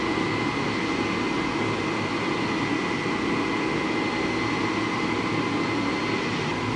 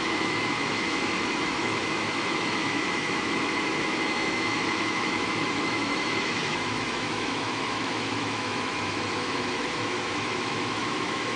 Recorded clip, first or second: first